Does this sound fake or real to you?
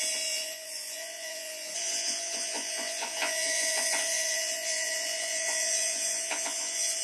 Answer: fake